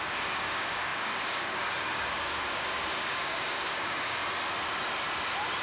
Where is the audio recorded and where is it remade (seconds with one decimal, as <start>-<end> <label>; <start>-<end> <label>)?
0.0-4.2 remade; 4.2-5.6 recorded

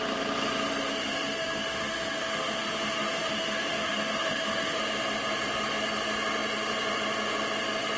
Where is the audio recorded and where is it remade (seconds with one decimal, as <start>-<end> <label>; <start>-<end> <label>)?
0.0-0.9 recorded; 0.9-4.8 remade; 4.8-8.0 recorded

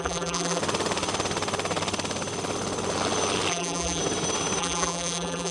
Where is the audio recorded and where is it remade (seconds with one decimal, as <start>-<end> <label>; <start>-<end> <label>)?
0.0-0.6 remade; 0.6-3.5 recorded; 3.5-4.0 remade; 4.0-4.6 recorded; 4.6-5.5 remade

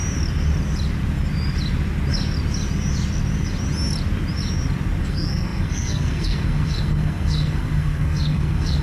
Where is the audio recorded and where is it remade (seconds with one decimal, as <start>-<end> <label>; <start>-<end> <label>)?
0.0-5.0 recorded; 5.0-8.8 remade

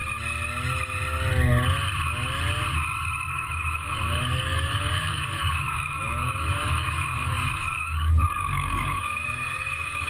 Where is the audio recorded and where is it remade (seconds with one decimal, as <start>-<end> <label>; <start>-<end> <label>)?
0.0-3.3 recorded; 3.3-10.1 remade

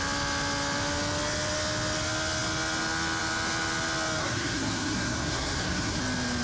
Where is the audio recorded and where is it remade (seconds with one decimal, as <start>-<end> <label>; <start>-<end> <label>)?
0.0-4.2 recorded; 4.2-6.0 remade; 6.0-6.4 recorded